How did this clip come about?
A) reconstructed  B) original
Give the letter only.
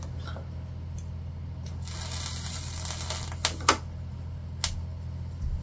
B